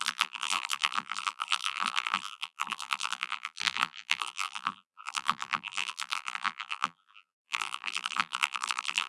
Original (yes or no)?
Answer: no